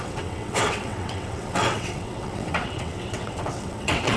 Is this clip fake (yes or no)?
yes